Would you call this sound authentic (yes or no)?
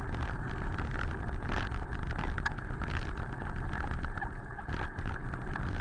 yes